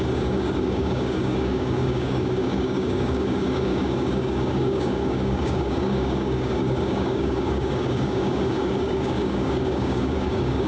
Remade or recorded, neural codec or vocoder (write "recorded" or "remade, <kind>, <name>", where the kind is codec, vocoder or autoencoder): remade, codec, DAC